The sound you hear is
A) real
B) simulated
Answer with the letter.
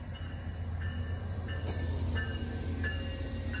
A